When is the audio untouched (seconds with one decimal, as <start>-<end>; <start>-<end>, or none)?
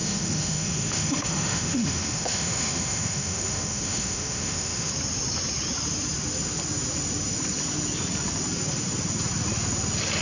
4.9-10.2